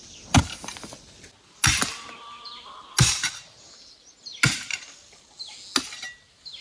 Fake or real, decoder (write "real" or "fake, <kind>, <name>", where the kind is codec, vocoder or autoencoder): real